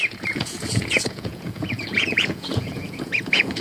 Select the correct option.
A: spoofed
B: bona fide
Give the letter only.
A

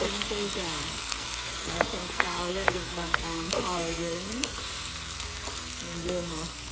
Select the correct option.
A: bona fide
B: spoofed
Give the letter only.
B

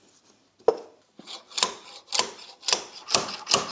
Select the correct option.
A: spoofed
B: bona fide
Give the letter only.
B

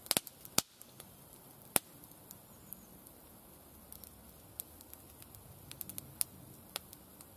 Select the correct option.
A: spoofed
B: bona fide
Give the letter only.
B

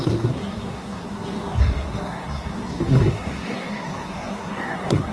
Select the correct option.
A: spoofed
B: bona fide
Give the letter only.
A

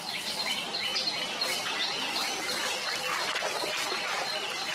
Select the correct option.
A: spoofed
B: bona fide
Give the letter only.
B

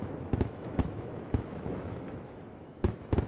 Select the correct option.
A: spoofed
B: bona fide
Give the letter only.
A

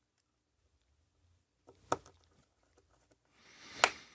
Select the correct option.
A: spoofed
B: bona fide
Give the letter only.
B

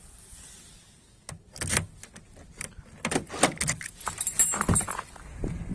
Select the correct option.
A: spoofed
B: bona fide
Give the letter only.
B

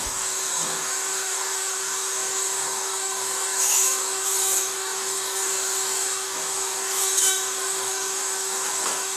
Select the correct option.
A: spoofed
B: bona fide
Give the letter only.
A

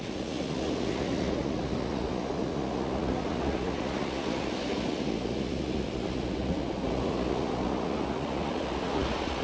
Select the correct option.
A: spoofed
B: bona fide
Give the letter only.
A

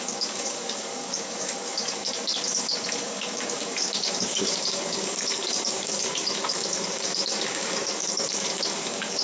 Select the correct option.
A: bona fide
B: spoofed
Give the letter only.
B